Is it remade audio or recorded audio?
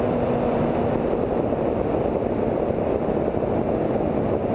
recorded